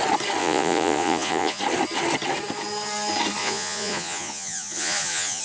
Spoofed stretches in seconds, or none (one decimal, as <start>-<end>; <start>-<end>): 0.4-1.6; 3.4-5.4